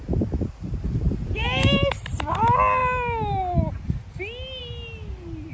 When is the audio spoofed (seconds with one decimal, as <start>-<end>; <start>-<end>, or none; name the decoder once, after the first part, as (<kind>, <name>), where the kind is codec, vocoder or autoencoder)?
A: none